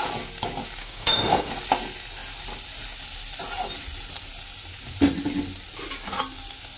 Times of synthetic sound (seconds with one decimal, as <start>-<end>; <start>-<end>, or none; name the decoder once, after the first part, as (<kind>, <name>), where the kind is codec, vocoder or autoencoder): 0.8-1.5 (autoencoder, DAC-VAE)